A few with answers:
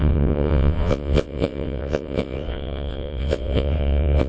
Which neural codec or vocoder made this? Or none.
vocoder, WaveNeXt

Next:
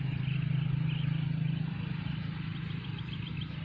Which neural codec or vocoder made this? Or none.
none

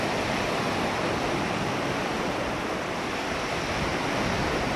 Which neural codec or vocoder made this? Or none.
none